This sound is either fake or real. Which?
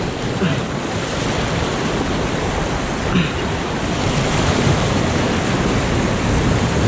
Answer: real